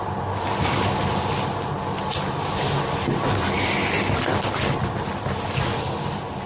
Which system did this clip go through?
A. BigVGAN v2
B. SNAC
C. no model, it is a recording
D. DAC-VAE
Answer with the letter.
C